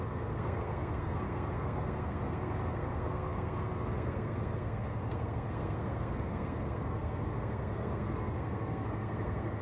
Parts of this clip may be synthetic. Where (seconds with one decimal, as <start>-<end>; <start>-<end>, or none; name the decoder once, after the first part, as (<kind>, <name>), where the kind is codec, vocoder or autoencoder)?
0.0-9.6 (codec, SNAC)